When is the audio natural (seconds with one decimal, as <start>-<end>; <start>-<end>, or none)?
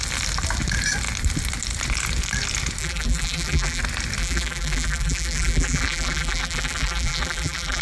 0.0-2.8; 3.8-4.2